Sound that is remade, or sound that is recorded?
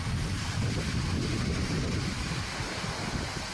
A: recorded